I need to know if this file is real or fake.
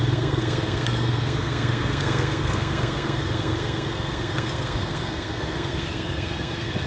fake